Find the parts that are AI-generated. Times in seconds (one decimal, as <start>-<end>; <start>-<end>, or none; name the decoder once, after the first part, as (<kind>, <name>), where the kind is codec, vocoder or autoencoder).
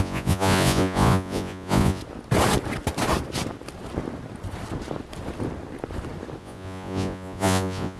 0.0-2.0 (vocoder, Vocos); 6.4-8.0